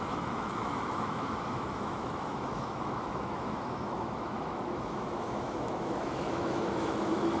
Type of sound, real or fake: fake